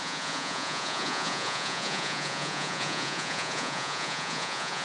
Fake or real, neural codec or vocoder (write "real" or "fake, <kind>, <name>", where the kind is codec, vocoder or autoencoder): fake, vocoder, Vocos